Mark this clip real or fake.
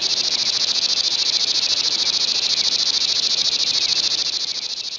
real